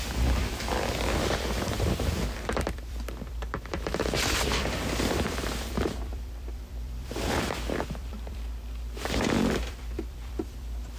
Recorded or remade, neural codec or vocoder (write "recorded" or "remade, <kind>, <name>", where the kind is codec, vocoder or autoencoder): remade, vocoder, BigVGAN v2